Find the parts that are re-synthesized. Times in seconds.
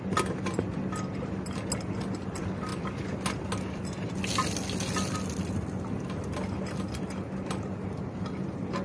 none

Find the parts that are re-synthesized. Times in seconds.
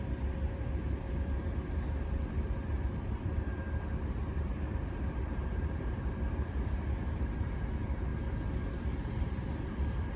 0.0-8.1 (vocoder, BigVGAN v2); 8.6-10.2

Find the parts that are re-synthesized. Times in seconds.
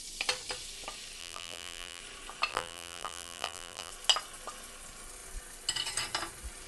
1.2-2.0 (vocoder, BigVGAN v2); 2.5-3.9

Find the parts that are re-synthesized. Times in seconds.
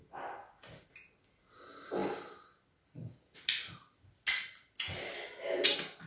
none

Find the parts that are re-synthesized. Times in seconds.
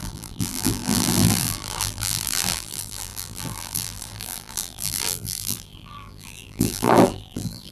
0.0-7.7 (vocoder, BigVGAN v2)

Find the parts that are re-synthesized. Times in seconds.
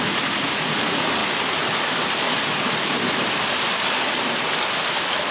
none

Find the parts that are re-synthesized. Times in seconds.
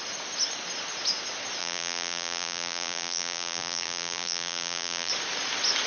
1.6-5.1 (vocoder, BigVGAN v2)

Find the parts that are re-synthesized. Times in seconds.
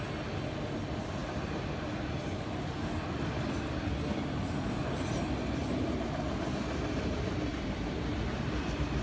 1.2-2.6 (vocoder, BigVGAN v2); 7.5-8.5